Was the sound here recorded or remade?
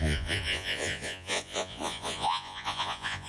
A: remade